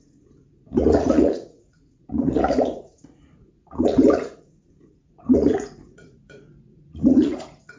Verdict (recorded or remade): remade